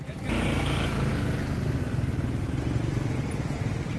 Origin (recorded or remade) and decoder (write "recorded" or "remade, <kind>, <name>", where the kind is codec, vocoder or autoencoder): recorded